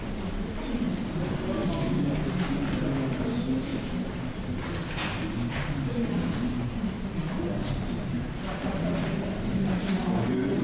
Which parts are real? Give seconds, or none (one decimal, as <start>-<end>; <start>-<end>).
0.0-3.7; 4.5-9.5; 10.1-10.6